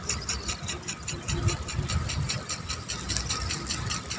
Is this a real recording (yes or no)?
yes